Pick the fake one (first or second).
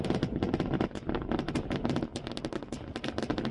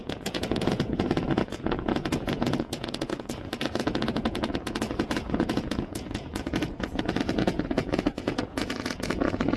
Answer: second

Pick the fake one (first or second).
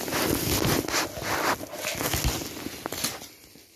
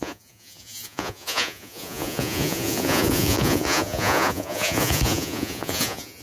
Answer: second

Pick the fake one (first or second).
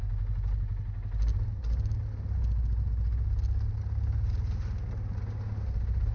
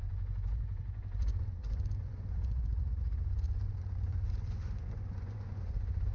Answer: second